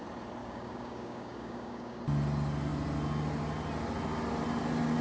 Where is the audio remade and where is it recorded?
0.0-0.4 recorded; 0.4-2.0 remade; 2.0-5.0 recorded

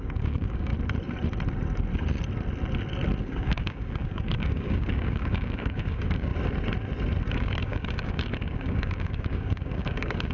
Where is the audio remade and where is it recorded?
0.0-0.7 remade; 0.7-3.2 recorded; 3.2-6.3 remade; 6.3-7.3 recorded; 7.3-10.3 remade

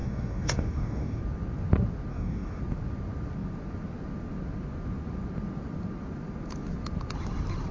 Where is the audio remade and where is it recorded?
0.0-1.2 remade; 1.2-2.1 recorded; 2.1-2.6 remade; 2.6-7.7 recorded

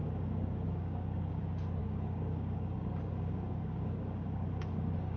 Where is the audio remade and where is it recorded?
0.0-1.4 remade; 1.4-1.8 recorded; 1.8-5.2 remade